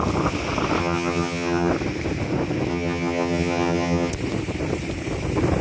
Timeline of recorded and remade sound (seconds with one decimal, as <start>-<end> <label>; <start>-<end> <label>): 0.0-0.8 recorded; 0.8-1.7 remade; 1.7-2.7 recorded; 2.7-4.1 remade; 4.1-5.6 recorded